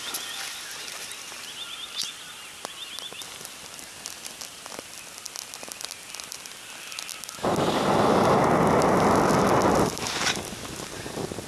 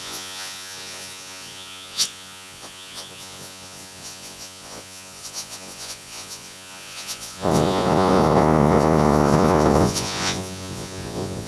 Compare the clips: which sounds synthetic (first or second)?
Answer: second